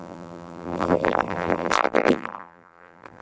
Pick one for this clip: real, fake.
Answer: fake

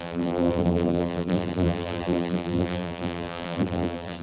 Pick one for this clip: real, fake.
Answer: fake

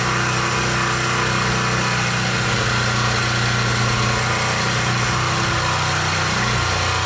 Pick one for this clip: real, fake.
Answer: real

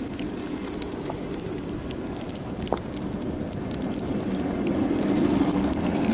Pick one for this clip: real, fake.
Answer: real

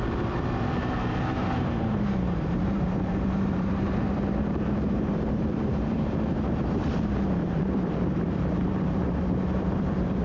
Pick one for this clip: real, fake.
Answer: fake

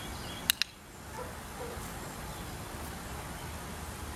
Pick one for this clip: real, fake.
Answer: real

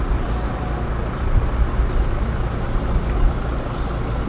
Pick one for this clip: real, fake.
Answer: real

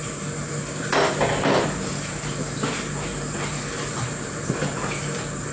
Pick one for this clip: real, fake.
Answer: real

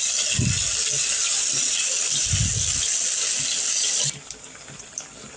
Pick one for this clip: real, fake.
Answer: real